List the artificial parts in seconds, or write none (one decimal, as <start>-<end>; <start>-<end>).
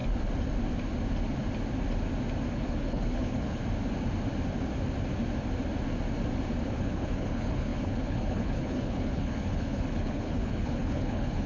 2.5-3.6; 6.6-11.5